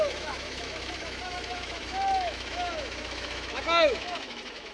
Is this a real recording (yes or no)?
no